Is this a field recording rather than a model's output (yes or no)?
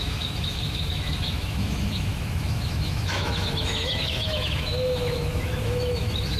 no